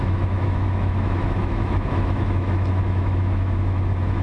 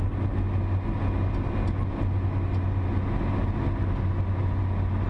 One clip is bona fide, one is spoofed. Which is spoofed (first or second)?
first